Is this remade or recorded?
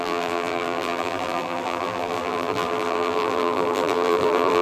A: remade